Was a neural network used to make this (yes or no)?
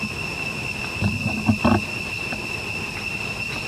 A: yes